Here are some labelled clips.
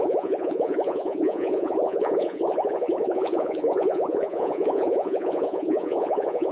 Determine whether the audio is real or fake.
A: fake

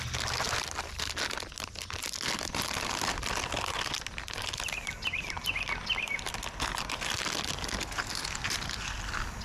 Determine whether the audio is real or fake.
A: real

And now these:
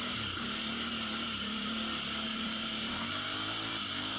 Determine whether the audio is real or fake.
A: fake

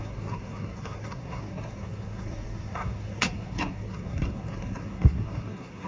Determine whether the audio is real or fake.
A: fake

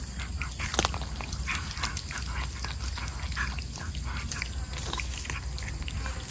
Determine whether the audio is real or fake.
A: real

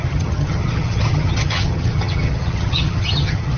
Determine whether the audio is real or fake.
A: fake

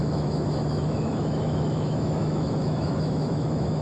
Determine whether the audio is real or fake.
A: fake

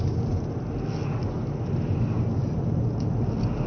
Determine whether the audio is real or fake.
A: real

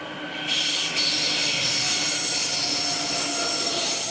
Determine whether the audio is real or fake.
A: real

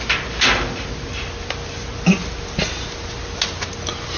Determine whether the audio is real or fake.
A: real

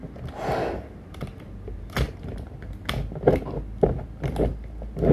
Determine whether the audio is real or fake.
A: real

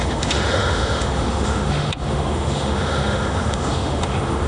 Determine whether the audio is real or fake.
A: fake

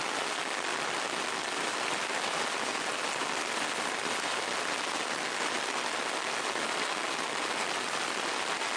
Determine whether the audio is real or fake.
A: real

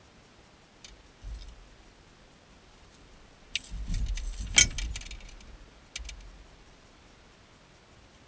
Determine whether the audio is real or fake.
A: real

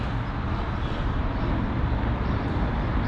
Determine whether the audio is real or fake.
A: real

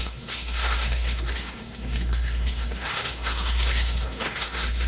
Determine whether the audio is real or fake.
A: fake